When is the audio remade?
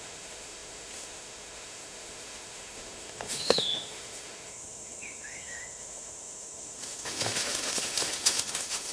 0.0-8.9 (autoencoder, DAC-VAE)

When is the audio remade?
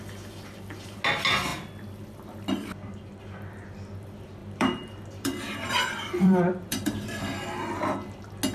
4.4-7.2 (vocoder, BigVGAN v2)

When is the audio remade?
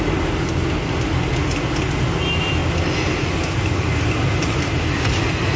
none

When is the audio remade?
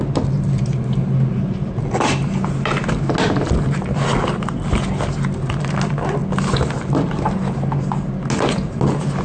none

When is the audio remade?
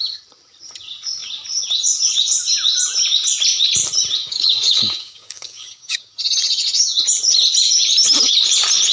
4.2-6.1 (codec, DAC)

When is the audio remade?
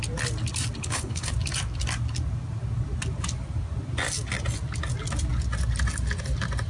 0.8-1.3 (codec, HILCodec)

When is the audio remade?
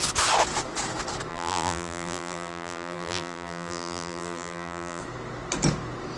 1.3-5.0 (vocoder, BigVGAN v2)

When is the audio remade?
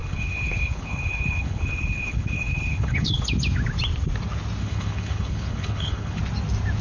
0.0-3.2 (codec, HILCodec); 4.6-6.2